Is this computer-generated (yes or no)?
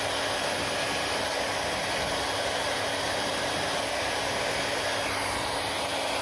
no